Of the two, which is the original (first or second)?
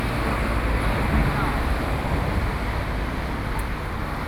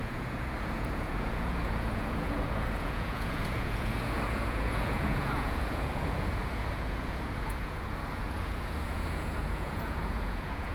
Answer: first